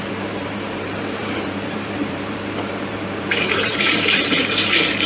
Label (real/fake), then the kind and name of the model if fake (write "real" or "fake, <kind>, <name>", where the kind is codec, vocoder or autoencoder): fake, vocoder, BigVGAN v2